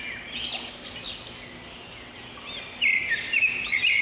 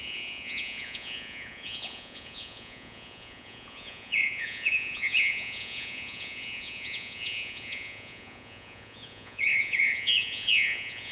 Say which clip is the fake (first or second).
second